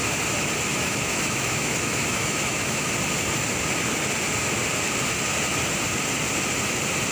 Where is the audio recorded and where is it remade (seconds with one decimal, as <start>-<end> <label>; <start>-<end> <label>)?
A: 0.0-0.7 recorded; 0.7-2.9 remade; 2.9-7.1 recorded